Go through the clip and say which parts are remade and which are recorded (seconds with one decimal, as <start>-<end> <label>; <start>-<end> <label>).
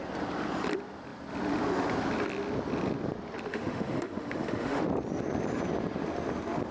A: 0.0-3.5 recorded; 3.5-4.8 remade; 4.8-6.7 recorded